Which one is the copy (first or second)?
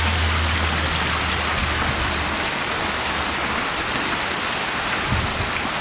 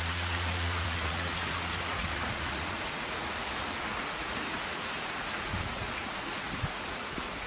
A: second